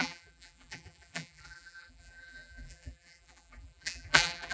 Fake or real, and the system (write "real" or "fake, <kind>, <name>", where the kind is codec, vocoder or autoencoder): fake, vocoder, BigVGAN v2